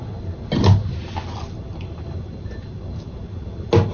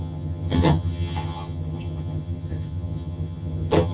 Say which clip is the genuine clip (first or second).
first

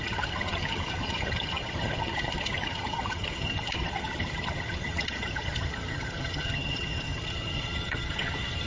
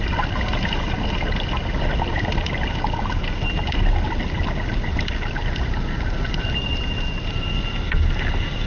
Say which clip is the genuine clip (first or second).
second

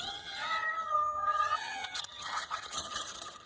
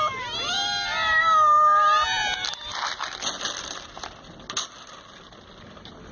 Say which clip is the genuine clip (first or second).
second